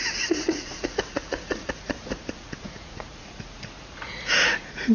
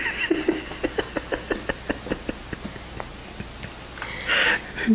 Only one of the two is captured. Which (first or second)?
second